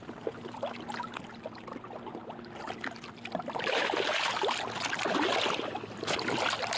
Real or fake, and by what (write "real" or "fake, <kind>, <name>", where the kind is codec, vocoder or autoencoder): real